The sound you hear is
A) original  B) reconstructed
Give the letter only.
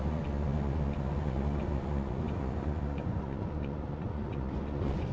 B